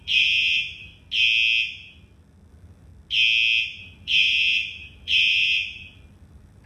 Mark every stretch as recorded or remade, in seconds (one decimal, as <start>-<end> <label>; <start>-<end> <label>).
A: 0.0-0.9 remade; 0.9-2.5 recorded; 2.5-2.9 remade; 2.9-3.8 recorded; 3.8-6.7 remade